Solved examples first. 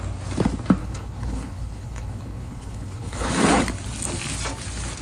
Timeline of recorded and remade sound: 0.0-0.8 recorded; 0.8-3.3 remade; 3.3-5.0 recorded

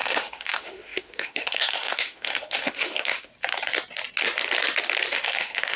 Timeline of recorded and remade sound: 0.0-3.3 remade; 3.3-5.1 recorded; 5.1-5.8 remade

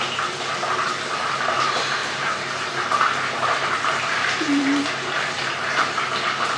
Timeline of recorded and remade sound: 0.0-2.0 recorded; 2.0-6.0 remade; 6.0-6.6 recorded

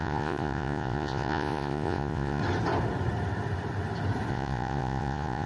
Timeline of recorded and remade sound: 0.0-2.4 remade; 2.4-4.3 recorded; 4.3-5.5 remade